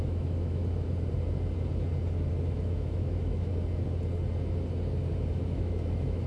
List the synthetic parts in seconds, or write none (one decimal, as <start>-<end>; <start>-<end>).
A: 0.0-0.6; 2.3-3.5; 5.3-6.3